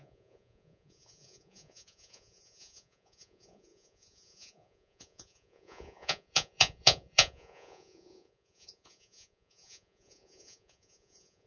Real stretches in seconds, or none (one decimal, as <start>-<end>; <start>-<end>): none